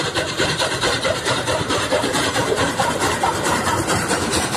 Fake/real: fake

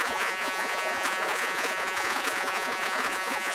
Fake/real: fake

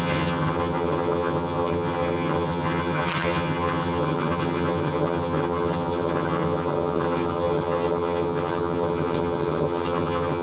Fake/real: fake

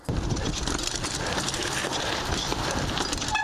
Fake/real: real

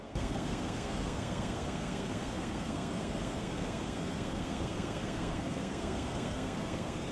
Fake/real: fake